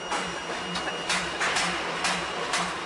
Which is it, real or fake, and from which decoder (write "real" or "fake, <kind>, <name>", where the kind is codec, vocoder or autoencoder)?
real